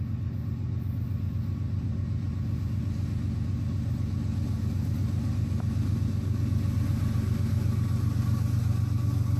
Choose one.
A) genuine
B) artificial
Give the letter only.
A